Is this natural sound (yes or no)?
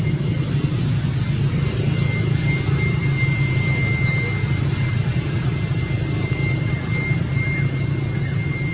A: yes